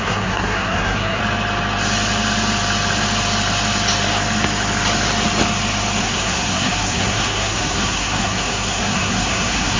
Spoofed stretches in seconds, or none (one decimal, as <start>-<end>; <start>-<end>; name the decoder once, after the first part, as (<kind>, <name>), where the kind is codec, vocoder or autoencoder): 0.0-1.2 (codec, SNAC); 6.0-9.8